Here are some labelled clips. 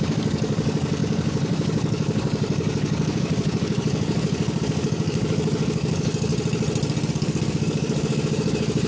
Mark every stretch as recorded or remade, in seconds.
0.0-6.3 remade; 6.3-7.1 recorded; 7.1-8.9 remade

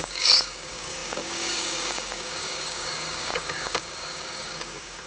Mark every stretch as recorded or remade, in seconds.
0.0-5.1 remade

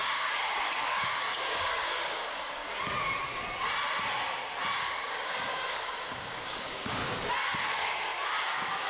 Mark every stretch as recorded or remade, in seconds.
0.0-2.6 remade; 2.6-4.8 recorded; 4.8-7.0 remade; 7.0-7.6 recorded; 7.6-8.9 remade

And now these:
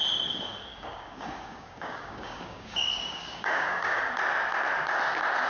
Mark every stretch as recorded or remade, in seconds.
0.0-0.7 recorded; 0.7-4.0 remade; 4.0-5.5 recorded